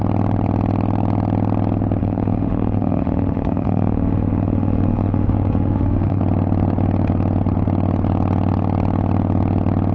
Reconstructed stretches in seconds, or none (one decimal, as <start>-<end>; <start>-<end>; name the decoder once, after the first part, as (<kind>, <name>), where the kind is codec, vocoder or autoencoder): 2.0-6.2 (autoencoder, DAC-VAE)